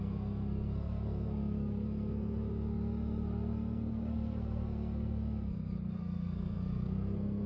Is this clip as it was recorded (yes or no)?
no